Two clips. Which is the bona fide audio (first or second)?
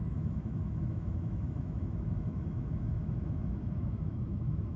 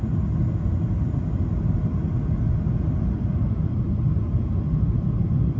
second